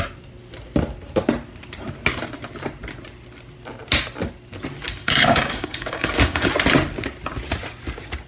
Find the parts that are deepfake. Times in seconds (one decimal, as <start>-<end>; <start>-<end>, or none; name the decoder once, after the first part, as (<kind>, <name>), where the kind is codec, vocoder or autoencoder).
5.0-6.5 (codec, DAC)